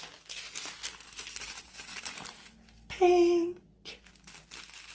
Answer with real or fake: real